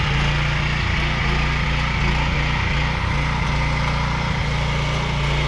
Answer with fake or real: real